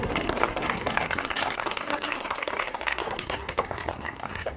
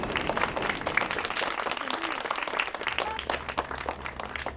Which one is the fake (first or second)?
first